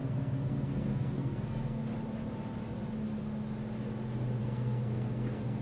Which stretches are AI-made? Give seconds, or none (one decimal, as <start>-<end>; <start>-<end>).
0.0-1.8; 4.4-5.6